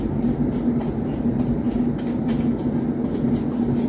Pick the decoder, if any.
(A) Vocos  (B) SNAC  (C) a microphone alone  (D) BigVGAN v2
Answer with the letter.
C